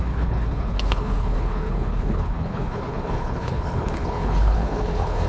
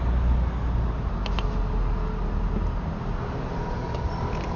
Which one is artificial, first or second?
first